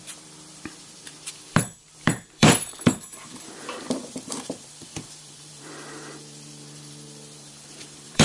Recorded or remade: remade